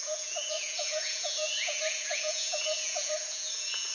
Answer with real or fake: fake